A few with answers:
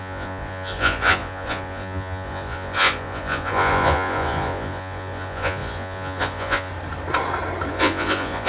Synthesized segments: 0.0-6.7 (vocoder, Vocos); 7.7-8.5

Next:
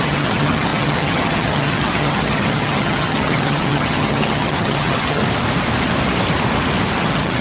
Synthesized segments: 0.0-5.2 (vocoder, HiFi-GAN); 7.0-7.4

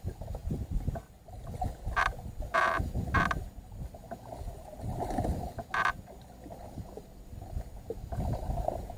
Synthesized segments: 0.4-2.3 (vocoder, BigVGAN v2)

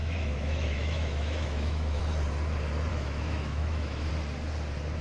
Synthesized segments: 0.0-2.0 (autoencoder, DAC-VAE); 2.9-4.1

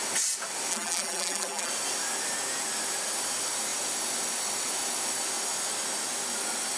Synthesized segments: 0.7-1.7 (vocoder, BigVGAN v2)